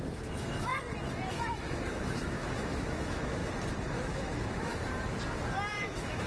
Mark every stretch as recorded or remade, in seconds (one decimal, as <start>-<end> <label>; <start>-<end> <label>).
0.0-0.7 remade; 0.7-1.3 recorded; 1.3-3.4 remade; 3.4-3.9 recorded; 3.9-4.7 remade; 4.7-5.7 recorded; 5.7-6.3 remade